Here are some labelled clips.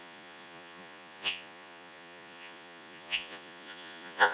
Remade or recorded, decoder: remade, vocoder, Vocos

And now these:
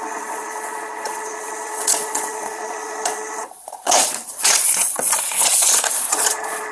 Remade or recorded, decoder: remade, vocoder, Vocos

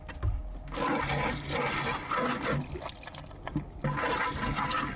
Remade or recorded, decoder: recorded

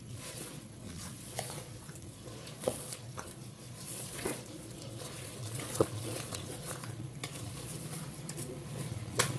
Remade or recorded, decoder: remade, vocoder, Vocos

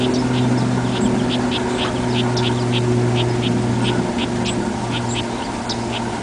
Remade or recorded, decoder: recorded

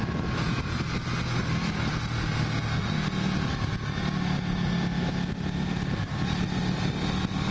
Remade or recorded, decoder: recorded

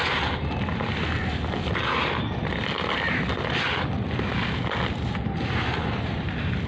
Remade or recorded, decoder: recorded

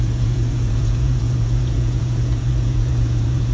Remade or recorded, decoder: remade, vocoder, Vocos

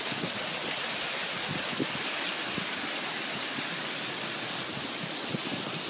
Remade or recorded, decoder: recorded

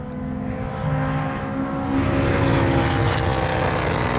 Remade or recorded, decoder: recorded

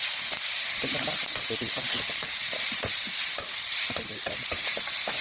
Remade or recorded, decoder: recorded